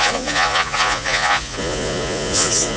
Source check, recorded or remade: remade